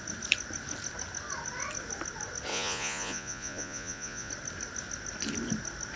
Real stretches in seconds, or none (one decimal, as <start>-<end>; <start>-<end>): 0.0-2.5; 4.3-6.0